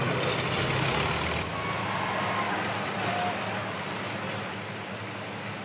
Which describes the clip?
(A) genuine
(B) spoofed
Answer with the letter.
A